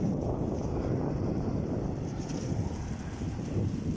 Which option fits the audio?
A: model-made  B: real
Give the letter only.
B